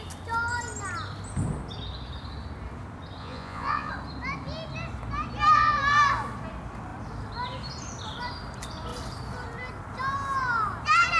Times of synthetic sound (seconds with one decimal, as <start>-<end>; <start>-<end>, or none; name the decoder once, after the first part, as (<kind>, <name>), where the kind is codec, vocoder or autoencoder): 3.2-3.9 (vocoder, Vocos)